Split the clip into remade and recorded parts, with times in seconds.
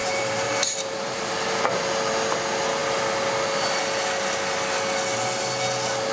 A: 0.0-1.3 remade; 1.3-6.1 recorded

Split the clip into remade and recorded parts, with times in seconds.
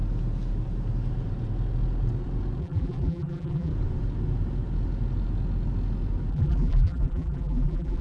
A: 0.0-2.6 recorded; 2.6-3.7 remade; 3.7-6.3 recorded; 6.3-8.0 remade